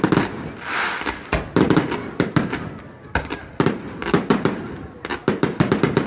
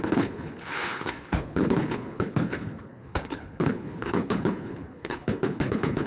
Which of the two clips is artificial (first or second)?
second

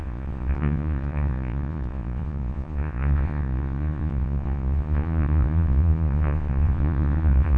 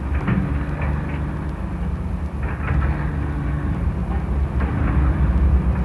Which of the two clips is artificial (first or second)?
first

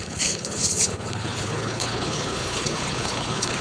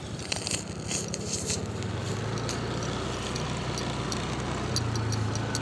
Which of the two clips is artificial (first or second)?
first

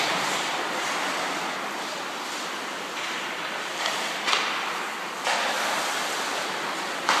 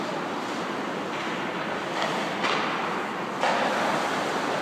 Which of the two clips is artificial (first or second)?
first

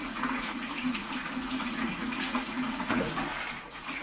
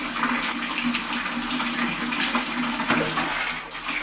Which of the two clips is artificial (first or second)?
first